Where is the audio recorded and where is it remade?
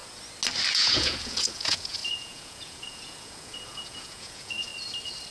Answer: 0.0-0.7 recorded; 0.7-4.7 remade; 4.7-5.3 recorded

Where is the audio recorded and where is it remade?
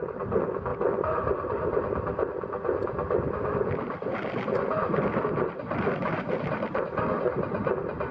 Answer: 0.0-8.1 recorded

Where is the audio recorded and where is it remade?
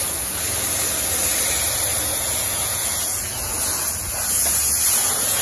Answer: 0.0-2.1 recorded; 2.1-5.4 remade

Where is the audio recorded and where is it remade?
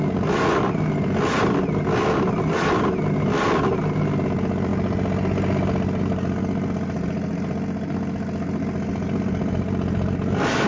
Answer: 0.0-10.7 recorded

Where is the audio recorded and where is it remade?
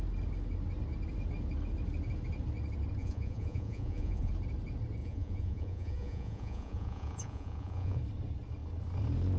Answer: 0.0-3.0 recorded; 3.0-4.3 remade; 4.3-5.0 recorded; 5.0-8.0 remade; 8.0-9.4 recorded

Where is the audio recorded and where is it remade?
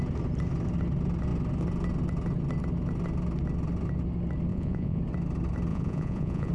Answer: 0.0-4.5 recorded; 4.5-5.0 remade; 5.0-5.7 recorded; 5.7-6.5 remade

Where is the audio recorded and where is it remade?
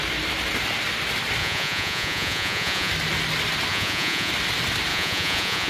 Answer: 0.0-1.4 recorded; 1.4-2.9 remade; 2.9-3.7 recorded; 3.7-4.3 remade; 4.3-4.9 recorded; 4.9-5.7 remade